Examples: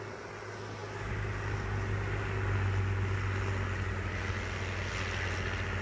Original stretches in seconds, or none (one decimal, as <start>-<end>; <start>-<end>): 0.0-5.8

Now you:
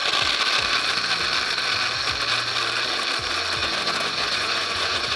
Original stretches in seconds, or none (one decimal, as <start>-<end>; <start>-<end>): 0.0-3.6

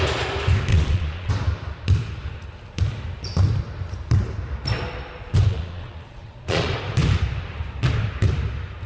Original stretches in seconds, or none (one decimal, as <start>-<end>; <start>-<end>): 0.0-0.7; 1.3-5.5; 6.7-8.9

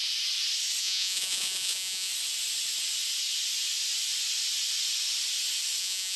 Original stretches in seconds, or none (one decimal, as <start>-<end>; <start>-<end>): 0.0-0.8; 2.1-5.8

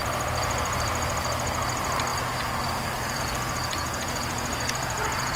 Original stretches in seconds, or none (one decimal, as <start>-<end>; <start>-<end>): 0.0-3.8